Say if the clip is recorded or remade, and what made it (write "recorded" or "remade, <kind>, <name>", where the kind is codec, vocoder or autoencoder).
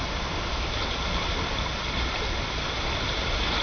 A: recorded